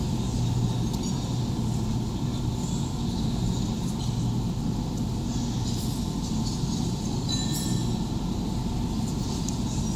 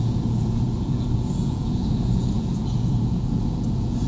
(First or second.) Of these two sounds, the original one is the first